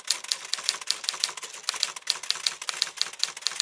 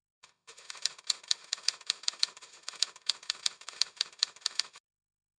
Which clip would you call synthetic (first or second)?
second